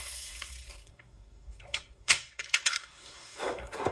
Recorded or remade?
remade